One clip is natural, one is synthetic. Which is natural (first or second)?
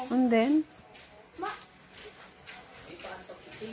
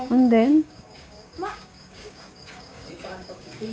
first